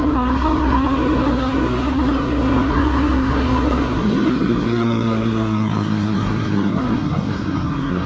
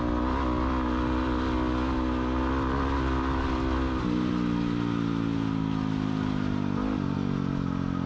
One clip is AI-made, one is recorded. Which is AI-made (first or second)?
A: first